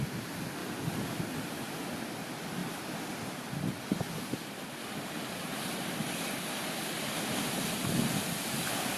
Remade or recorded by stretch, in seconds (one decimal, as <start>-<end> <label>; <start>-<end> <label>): 0.0-2.6 recorded; 2.6-7.6 remade; 7.6-9.0 recorded